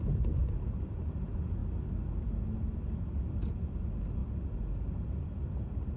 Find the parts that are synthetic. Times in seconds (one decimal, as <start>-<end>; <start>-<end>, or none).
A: none